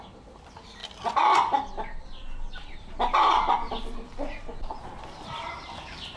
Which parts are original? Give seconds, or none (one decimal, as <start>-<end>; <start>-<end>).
0.0-6.2

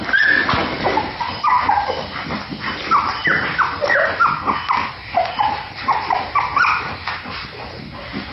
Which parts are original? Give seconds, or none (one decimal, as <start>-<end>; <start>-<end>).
0.0-0.6; 1.6-8.3

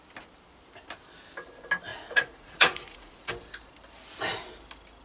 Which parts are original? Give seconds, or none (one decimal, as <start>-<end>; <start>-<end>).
0.0-1.9; 3.3-5.0

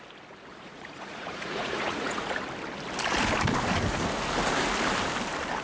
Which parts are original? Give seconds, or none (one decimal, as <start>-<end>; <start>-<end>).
0.0-0.5; 2.2-5.6

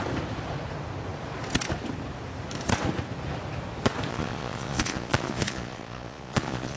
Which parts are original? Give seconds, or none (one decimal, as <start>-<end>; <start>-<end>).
0.0-4.1